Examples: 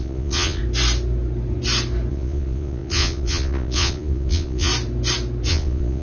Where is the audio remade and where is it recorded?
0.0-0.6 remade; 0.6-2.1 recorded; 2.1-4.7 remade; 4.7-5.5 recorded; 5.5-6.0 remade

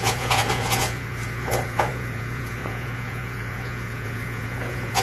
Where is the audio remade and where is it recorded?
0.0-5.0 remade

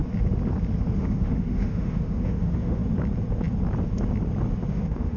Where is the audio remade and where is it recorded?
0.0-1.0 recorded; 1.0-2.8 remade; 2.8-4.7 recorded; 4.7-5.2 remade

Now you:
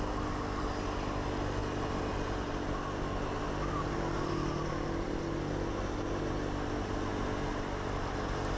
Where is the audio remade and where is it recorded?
0.0-8.6 recorded

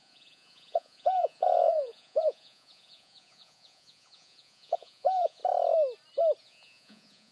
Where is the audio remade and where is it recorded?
0.0-5.4 remade; 5.4-6.4 recorded; 6.4-7.3 remade

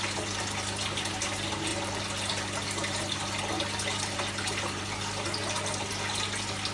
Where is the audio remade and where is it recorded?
0.0-6.7 recorded

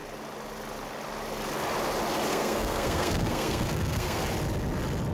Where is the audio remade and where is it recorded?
0.0-2.3 recorded; 2.3-4.2 remade; 4.2-5.1 recorded

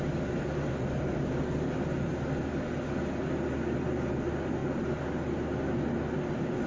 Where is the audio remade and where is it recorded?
0.0-6.7 recorded